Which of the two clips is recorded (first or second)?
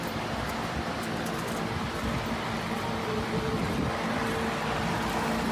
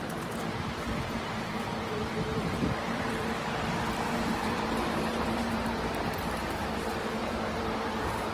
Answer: first